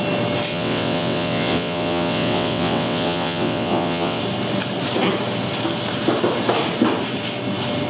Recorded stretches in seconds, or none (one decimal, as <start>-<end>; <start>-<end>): 0.0-0.5; 4.2-7.9